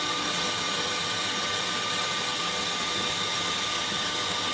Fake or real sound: fake